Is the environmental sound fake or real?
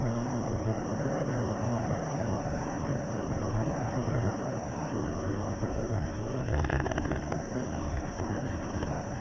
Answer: fake